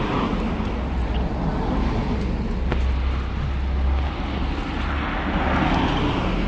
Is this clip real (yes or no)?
yes